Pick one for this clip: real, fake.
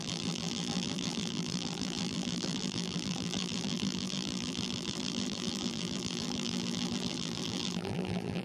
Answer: fake